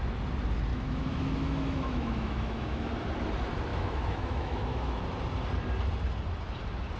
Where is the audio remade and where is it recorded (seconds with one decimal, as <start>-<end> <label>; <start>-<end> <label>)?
0.0-0.7 recorded; 0.7-2.9 remade; 2.9-3.7 recorded; 3.7-5.0 remade; 5.0-7.0 recorded